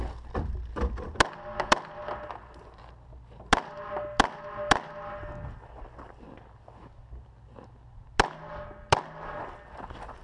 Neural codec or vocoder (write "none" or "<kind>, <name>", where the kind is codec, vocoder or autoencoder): none